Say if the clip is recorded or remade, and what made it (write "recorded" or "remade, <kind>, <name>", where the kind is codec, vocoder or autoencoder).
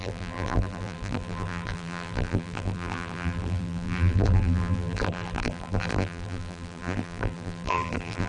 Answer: remade, vocoder, BigVGAN v2